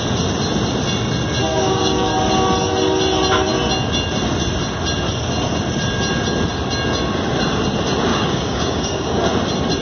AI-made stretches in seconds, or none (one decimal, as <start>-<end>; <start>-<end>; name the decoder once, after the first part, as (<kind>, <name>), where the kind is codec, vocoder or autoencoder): 1.5-2.1 (codec, DAC); 8.1-9.2